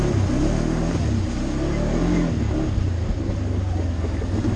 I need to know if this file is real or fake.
real